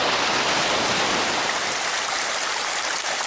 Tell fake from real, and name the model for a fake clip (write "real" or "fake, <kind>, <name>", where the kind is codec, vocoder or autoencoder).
real